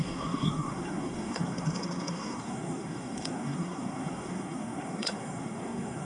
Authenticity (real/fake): fake